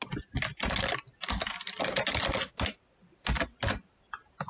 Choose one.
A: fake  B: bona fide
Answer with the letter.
B